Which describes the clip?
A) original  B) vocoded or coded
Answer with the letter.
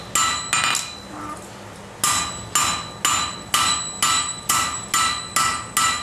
A